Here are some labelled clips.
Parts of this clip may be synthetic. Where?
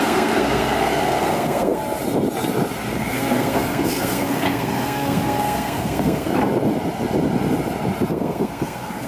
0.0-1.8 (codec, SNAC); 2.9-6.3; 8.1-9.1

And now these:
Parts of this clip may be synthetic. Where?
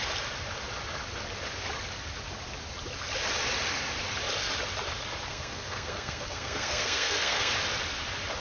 5.3-7.5 (codec, SNAC)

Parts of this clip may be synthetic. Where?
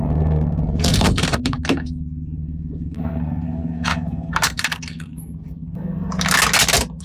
0.0-6.1 (codec, SNAC)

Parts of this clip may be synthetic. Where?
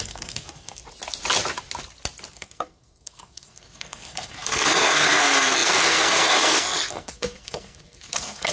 0.0-0.8 (codec, SNAC); 2.3-8.5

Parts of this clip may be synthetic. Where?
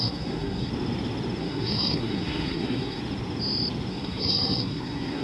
0.0-0.7 (codec, SNAC); 1.4-3.0; 3.9-5.2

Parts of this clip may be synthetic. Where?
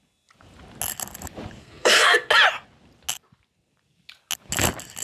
1.6-2.3 (codec, SNAC)